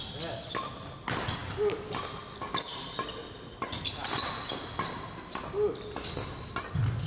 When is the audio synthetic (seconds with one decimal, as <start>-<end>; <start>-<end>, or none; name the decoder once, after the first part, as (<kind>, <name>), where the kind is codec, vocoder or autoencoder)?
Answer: none